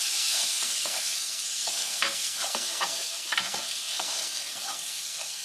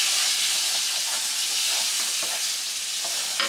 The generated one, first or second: first